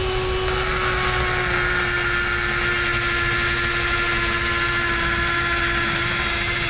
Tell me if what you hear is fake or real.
real